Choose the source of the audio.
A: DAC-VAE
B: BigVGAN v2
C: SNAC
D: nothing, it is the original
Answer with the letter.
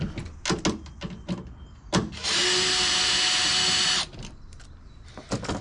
D